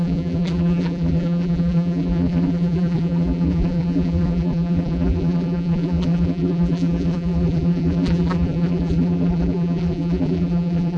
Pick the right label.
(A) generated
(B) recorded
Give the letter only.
A